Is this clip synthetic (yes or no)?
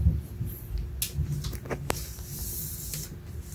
no